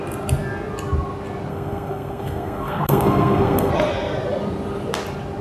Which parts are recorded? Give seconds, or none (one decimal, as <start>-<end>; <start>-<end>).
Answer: 0.0-1.5; 3.7-5.4